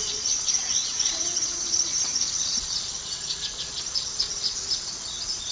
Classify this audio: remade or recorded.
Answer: remade